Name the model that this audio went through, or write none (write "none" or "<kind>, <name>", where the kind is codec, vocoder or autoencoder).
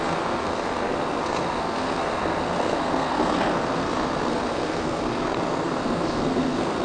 codec, SNAC